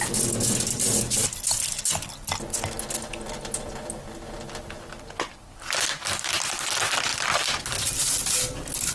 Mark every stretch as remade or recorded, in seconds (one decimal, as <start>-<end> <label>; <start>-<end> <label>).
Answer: 0.0-8.9 recorded